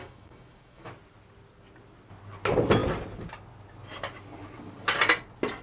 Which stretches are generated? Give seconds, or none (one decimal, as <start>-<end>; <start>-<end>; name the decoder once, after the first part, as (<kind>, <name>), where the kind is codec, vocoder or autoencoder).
0.0-0.9 (autoencoder, DAC-VAE)